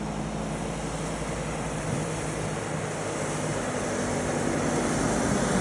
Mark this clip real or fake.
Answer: real